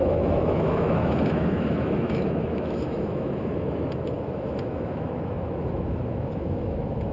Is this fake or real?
fake